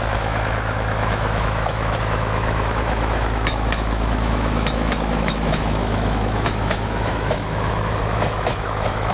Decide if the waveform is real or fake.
fake